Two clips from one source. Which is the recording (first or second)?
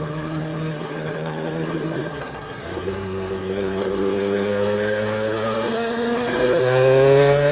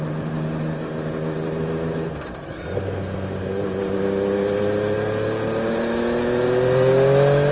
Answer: second